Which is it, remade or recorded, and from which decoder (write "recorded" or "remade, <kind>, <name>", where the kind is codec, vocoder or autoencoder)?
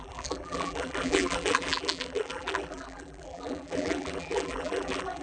remade, vocoder, BigVGAN v2